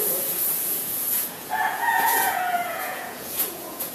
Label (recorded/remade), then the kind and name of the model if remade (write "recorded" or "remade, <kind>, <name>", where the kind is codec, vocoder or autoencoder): remade, vocoder, Vocos